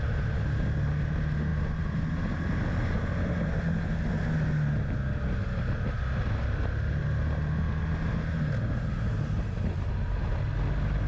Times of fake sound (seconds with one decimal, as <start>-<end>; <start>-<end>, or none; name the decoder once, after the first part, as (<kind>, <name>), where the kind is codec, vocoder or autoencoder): none